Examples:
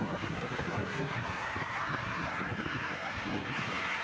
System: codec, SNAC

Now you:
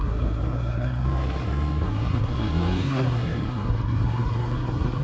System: codec, SNAC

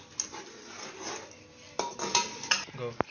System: none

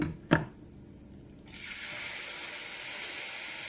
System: none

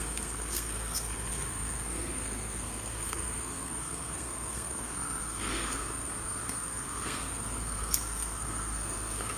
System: codec, SNAC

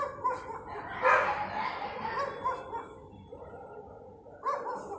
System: none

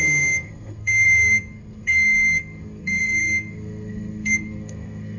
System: codec, SNAC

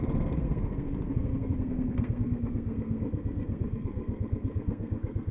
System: codec, SNAC